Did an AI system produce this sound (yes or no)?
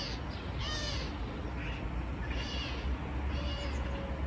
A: no